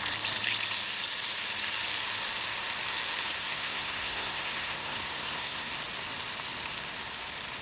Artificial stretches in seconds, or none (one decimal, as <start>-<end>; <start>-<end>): 3.4-5.7